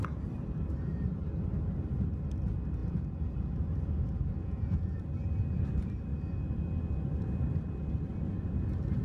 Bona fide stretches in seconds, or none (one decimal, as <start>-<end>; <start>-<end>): 0.0-2.8; 5.0-9.0